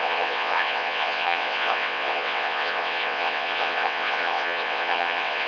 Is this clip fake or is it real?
fake